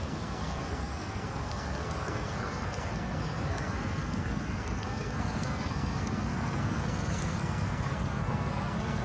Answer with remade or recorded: remade